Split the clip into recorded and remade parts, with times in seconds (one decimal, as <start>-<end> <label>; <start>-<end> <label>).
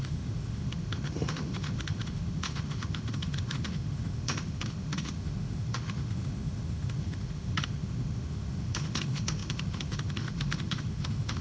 0.0-11.4 remade